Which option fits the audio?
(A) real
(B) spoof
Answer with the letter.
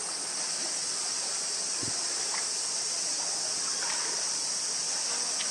A